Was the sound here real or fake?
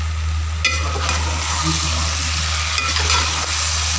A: real